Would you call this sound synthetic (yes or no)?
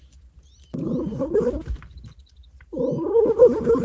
yes